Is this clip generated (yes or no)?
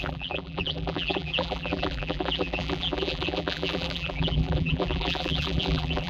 yes